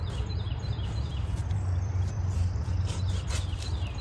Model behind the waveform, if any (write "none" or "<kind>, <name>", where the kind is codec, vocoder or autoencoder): vocoder, BigVGAN v2